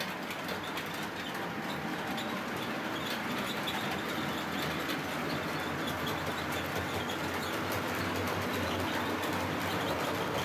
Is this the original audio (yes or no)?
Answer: yes